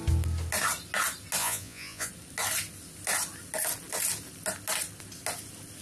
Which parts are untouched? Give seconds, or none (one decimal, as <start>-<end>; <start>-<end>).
0.0-1.4; 2.1-5.8